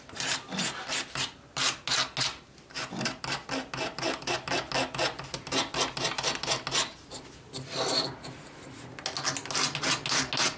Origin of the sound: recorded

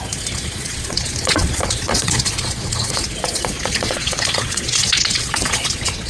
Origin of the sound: remade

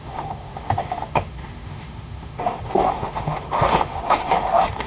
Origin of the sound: remade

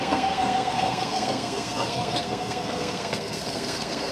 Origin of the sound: remade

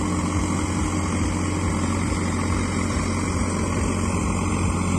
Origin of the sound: recorded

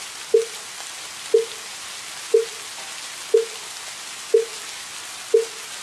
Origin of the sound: recorded